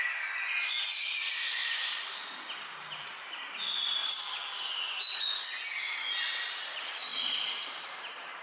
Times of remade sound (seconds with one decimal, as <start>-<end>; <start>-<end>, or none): 4.0-5.2; 7.1-7.6